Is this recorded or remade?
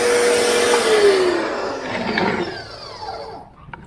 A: recorded